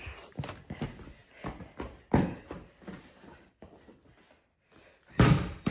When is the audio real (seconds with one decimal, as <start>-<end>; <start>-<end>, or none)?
0.0-5.7